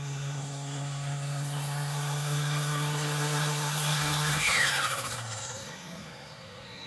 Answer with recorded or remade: remade